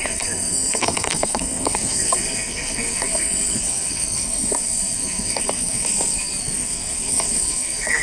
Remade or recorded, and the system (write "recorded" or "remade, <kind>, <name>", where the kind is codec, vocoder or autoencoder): remade, codec, SNAC